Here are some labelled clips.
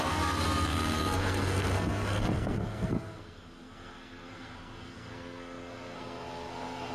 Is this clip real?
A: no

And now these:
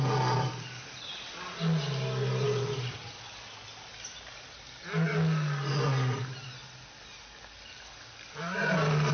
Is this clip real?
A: yes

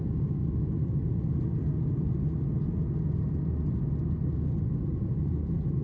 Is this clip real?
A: yes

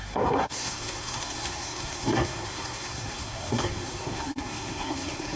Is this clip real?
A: no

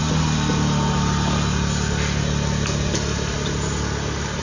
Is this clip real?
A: yes